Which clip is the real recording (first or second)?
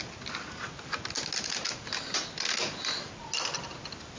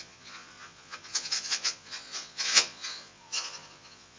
first